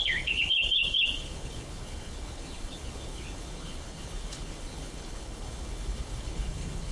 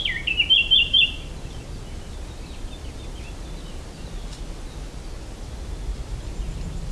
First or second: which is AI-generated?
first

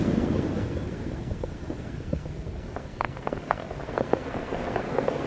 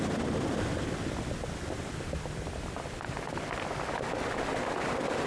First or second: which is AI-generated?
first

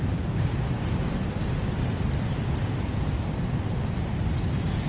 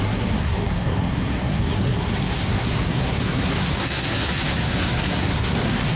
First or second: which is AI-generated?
second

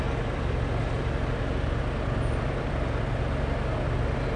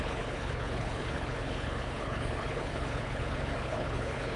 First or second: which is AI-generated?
second